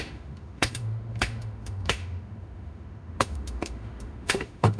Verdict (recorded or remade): remade